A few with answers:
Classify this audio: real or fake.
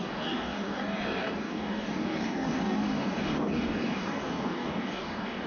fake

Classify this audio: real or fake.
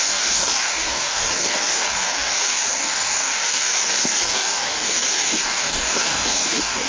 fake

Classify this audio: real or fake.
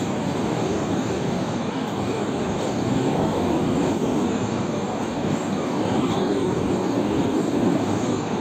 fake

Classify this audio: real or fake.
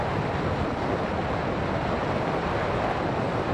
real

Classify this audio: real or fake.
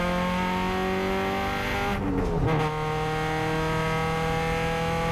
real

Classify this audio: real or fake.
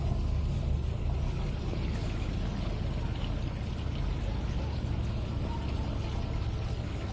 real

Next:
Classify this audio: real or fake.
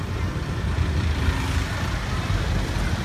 real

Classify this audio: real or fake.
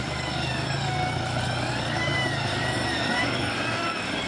fake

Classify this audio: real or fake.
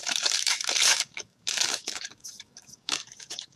fake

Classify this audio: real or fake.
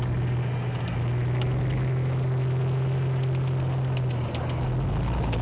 real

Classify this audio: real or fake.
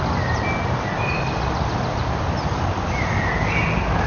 real